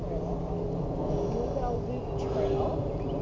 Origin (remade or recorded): recorded